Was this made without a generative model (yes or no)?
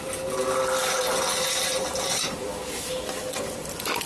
yes